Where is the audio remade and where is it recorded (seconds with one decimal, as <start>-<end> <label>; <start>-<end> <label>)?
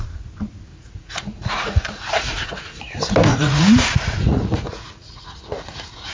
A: 0.0-0.7 recorded; 0.7-2.8 remade; 2.8-3.3 recorded; 3.3-6.1 remade